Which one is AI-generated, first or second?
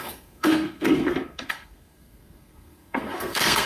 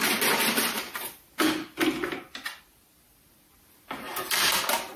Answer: first